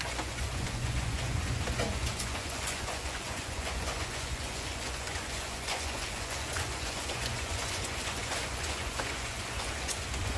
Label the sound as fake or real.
fake